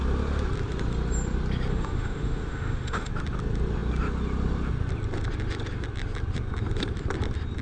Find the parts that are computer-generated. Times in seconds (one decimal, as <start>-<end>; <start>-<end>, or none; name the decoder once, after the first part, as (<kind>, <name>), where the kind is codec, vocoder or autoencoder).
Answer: 1.7-3.1 (autoencoder, DAC-VAE)